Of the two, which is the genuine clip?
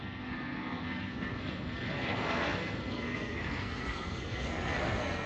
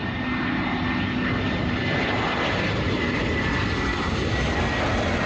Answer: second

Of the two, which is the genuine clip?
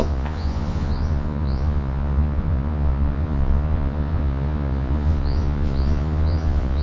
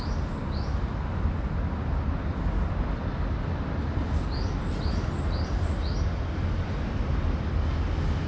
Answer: second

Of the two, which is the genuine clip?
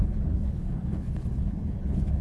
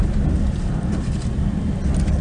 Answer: second